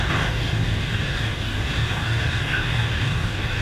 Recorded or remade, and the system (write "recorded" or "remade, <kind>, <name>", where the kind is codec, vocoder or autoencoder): remade, codec, DAC